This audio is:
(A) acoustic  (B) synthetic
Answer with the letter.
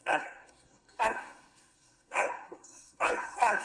B